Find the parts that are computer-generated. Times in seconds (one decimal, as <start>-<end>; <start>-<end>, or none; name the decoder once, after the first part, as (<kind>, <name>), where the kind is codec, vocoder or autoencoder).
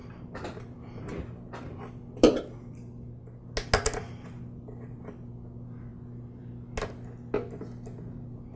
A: none